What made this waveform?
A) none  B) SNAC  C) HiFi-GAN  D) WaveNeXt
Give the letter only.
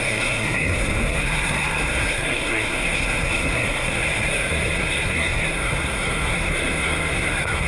B